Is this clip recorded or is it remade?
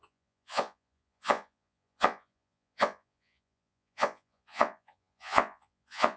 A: remade